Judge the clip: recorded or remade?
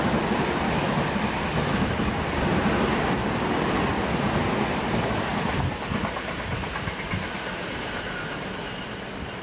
recorded